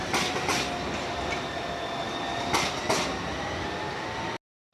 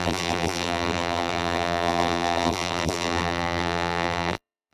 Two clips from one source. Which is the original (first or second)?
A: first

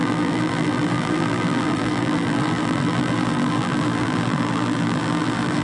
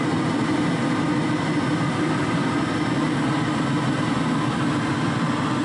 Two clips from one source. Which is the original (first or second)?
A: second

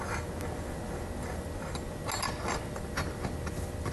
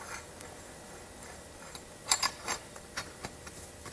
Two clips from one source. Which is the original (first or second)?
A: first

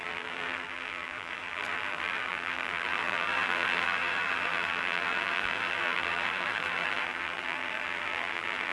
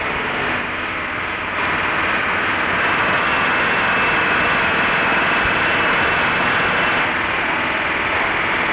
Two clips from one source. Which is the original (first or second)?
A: second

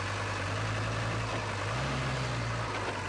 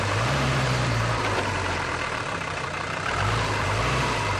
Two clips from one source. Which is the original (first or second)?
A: first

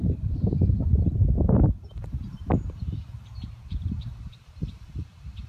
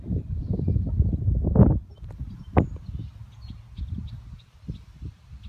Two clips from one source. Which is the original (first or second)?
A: second